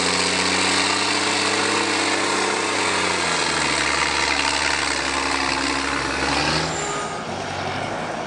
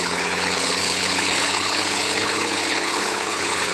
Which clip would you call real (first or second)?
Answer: first